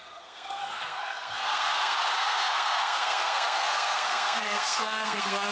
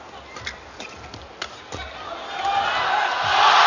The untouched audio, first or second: second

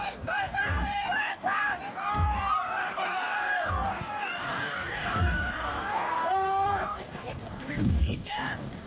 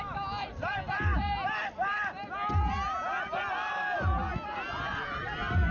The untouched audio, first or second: second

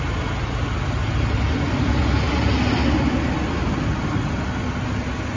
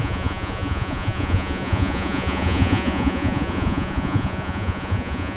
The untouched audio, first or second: first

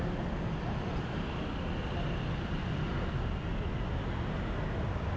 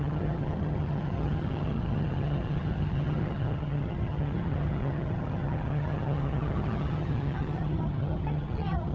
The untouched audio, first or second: first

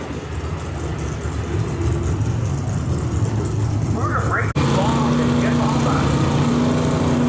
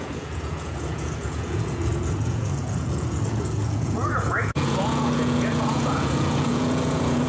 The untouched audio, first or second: first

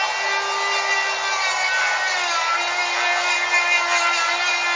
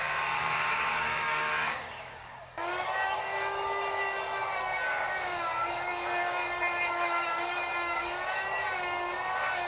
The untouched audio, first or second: first